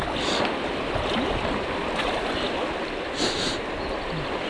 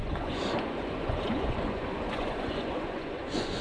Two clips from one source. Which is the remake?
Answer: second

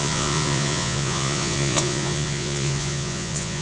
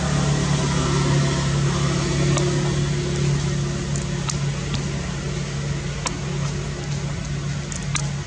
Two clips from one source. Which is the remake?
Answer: first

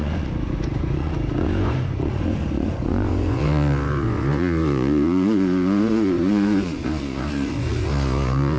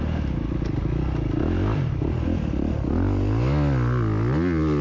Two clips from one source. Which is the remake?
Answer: first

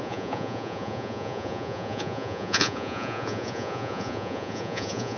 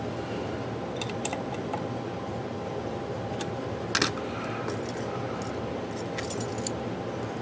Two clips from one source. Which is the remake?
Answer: first